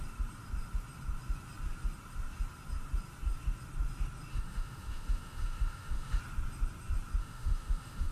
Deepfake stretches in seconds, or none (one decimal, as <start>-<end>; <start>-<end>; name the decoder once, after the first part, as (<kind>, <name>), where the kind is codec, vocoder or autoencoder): 4.3-6.2 (autoencoder, DAC-VAE); 7.2-8.1